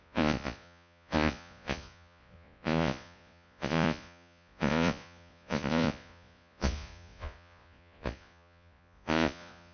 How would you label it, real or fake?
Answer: fake